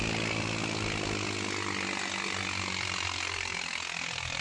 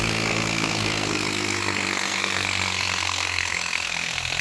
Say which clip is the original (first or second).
first